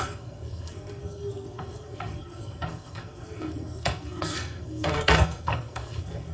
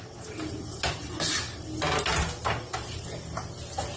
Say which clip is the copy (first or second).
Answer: first